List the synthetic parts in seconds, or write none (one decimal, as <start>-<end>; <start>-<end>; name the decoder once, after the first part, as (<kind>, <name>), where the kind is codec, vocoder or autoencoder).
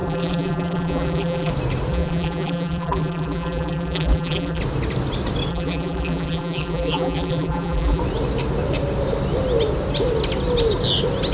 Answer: 0.0-1.5 (vocoder, BigVGAN v2); 1.9-4.6; 5.5-8.0